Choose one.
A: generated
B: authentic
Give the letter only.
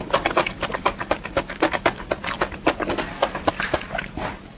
B